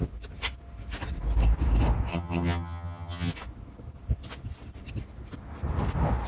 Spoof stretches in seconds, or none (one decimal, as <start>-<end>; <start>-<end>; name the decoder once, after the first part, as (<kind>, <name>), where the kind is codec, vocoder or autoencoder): 2.1-3.3 (vocoder, HiFi-GAN)